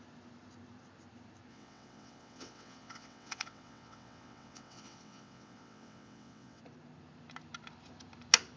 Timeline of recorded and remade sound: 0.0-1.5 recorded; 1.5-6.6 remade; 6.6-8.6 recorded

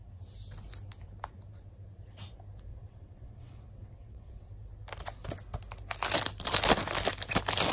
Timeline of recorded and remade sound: 0.0-2.7 recorded; 2.7-4.4 remade; 4.4-7.7 recorded